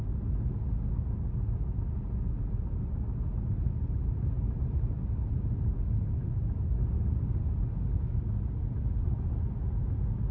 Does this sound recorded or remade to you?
recorded